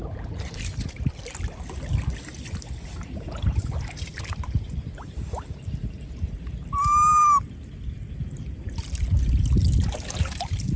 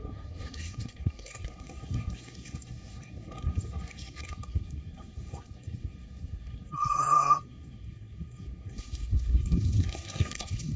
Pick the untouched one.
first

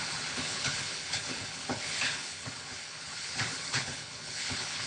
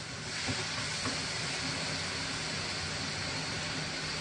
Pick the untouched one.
second